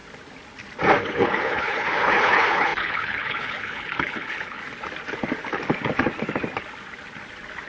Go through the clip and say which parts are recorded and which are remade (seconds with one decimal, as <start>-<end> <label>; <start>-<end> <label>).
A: 0.0-1.0 recorded; 1.0-4.6 remade; 4.6-7.7 recorded